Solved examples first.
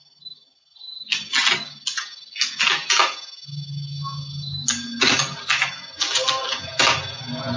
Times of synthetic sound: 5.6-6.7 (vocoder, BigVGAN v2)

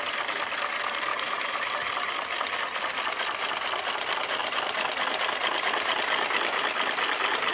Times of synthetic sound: 1.1-1.7 (vocoder, BigVGAN v2)

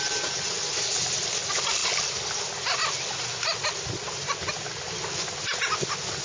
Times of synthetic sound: none

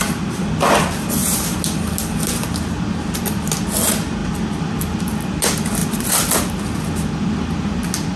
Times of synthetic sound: none

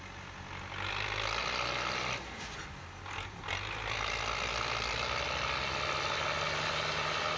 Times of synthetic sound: 1.4-2.8 (vocoder, BigVGAN v2)